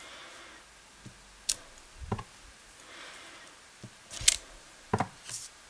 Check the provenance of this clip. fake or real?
real